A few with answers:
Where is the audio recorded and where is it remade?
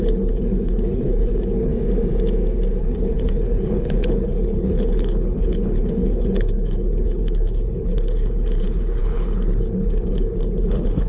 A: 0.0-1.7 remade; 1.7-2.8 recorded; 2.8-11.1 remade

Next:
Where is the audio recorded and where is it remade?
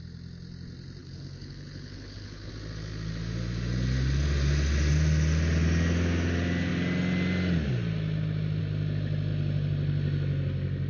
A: 0.0-1.0 recorded; 1.0-2.5 remade; 2.5-10.9 recorded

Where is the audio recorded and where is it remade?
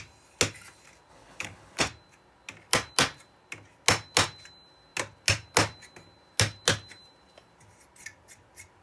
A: 0.0-1.1 recorded; 1.1-1.8 remade; 1.8-8.8 recorded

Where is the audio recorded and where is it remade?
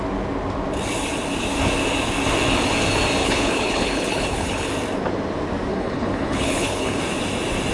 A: 0.0-3.2 recorded; 3.2-4.7 remade; 4.7-5.7 recorded; 5.7-7.0 remade; 7.0-7.7 recorded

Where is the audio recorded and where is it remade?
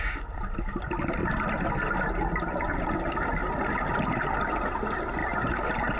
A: 0.0-6.0 recorded